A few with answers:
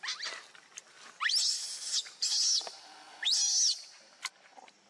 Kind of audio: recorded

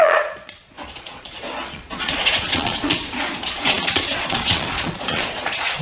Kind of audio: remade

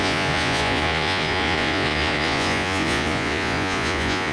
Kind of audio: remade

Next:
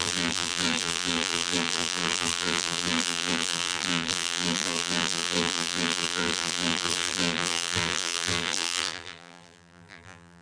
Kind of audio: remade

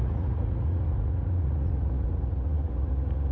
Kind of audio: remade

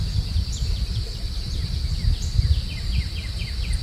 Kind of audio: recorded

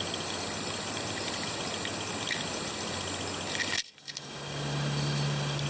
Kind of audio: recorded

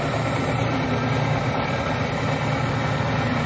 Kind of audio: recorded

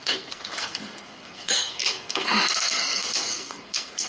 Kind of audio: remade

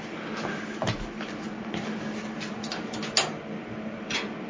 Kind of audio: recorded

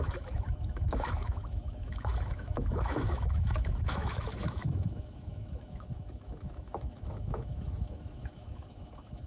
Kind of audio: remade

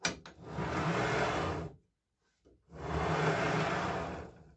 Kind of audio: recorded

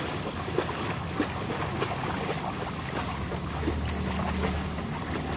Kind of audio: recorded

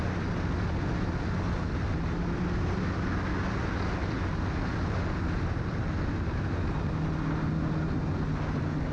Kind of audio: recorded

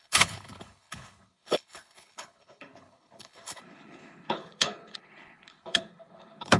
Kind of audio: remade